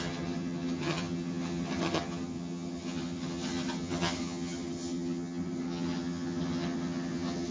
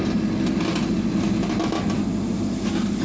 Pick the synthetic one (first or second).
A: first